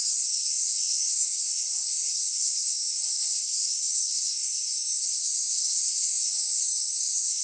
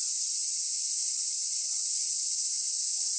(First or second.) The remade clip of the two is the first